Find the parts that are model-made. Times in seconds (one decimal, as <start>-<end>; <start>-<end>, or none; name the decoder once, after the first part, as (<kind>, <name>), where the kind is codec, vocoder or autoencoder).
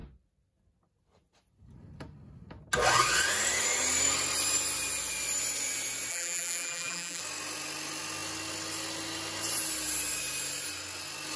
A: 6.1-7.2 (vocoder, BigVGAN v2)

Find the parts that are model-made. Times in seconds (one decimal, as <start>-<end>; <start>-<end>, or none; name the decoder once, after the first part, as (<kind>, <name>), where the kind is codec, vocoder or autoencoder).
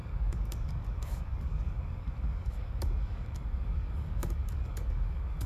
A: 0.0-5.5 (codec, DAC)